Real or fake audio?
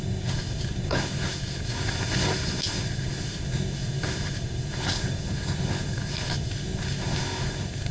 fake